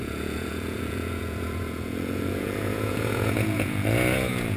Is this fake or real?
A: fake